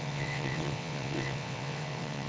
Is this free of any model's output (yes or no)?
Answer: no